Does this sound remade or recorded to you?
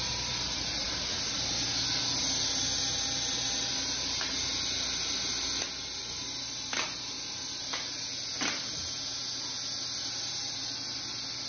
recorded